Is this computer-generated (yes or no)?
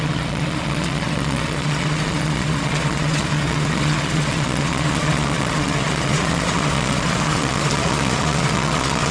yes